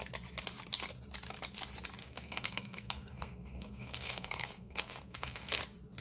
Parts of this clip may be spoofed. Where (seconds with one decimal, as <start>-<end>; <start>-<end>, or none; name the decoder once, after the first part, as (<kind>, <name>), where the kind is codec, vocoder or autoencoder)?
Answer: 2.0-5.6 (codec, SNAC)